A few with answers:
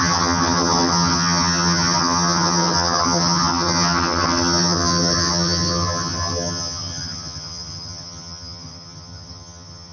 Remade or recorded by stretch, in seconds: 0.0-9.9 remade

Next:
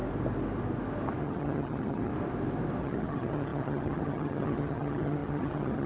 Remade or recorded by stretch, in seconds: 0.0-1.2 recorded; 1.2-2.1 remade; 2.1-2.8 recorded; 2.8-5.9 remade